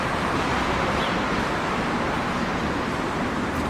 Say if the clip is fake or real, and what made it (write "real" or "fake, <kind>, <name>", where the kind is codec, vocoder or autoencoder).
fake, vocoder, BigVGAN v2